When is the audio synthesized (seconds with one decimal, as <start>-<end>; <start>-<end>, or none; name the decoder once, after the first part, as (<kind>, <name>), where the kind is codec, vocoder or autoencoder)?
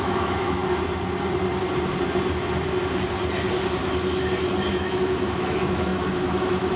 0.0-0.6 (autoencoder, DAC-VAE); 4.7-6.8